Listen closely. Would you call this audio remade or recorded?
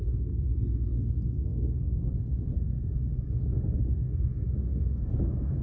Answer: remade